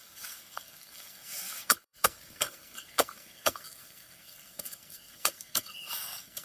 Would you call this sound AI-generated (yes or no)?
yes